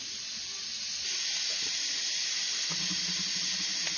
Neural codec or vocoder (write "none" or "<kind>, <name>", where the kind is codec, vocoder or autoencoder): none